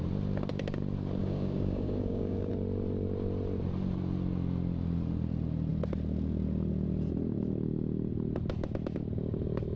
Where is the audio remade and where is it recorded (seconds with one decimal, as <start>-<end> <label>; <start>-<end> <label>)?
0.0-1.2 recorded; 1.2-2.5 remade; 2.5-9.8 recorded